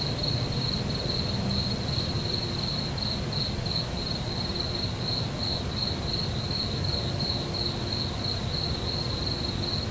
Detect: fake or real real